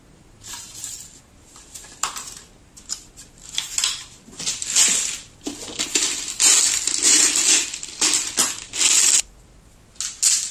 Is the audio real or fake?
real